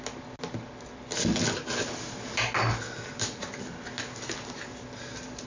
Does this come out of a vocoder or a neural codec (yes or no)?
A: no